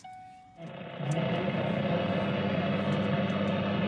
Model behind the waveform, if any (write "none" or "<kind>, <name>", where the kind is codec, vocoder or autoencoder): none